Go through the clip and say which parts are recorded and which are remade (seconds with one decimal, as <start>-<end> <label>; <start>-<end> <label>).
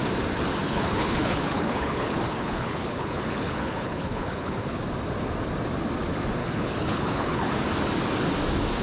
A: 0.0-0.6 recorded; 0.6-4.8 remade; 4.8-6.4 recorded; 6.4-7.5 remade; 7.5-8.8 recorded